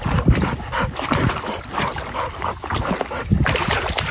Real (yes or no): yes